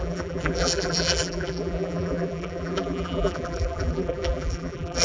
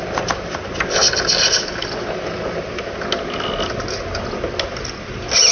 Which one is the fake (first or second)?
first